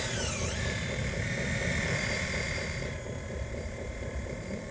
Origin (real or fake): fake